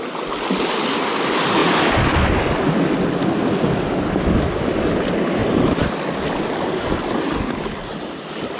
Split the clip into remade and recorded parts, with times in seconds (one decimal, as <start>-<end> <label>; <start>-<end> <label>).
0.0-8.6 recorded